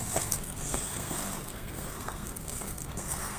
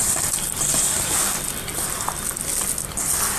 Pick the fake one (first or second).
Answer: first